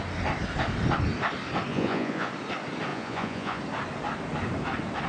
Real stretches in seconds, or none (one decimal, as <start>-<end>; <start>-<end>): 0.0-1.7; 2.3-2.9; 3.6-5.1